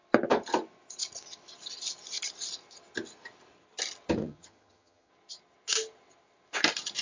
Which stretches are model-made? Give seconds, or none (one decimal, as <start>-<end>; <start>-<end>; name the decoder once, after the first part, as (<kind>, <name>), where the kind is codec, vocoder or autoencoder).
4.2-5.1 (vocoder, HiFi-GAN)